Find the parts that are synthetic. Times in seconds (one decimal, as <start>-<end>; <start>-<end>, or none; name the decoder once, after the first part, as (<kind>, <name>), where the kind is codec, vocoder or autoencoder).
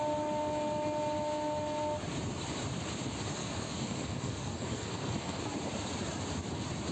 3.4-5.4 (codec, SNAC)